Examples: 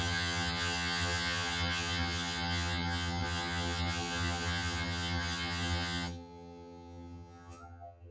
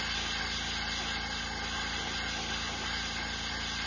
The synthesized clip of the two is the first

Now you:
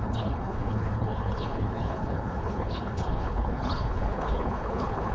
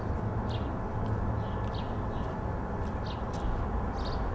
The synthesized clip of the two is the first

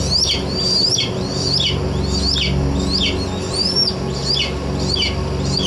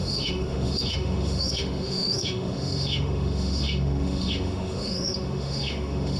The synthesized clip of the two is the second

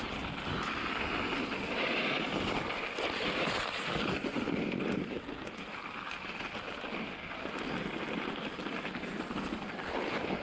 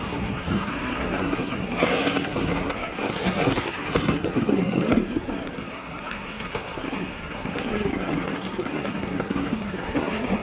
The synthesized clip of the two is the second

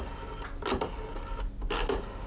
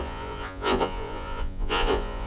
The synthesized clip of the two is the second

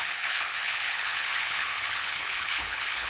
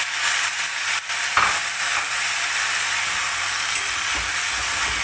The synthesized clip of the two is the first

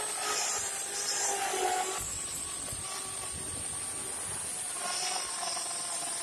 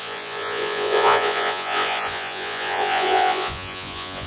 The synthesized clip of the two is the second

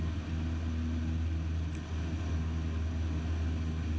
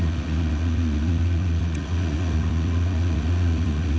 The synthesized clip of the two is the second